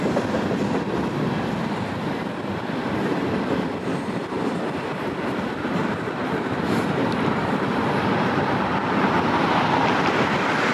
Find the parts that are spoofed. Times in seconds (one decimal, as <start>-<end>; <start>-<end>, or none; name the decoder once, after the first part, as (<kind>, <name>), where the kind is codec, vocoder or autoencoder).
5.8-8.7 (vocoder, BigVGAN v2)